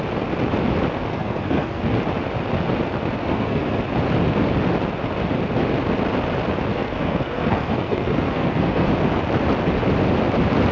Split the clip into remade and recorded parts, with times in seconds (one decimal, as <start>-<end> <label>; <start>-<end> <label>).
0.0-1.1 recorded; 1.1-1.8 remade; 1.8-3.2 recorded; 3.2-3.8 remade; 3.8-6.7 recorded; 6.7-8.9 remade; 8.9-10.7 recorded